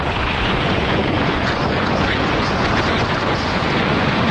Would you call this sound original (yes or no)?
no